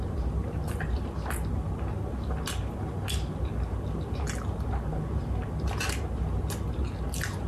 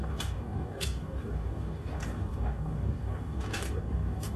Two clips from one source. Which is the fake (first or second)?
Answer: second